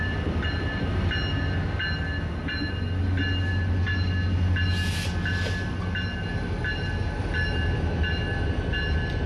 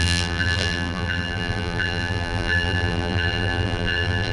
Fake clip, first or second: second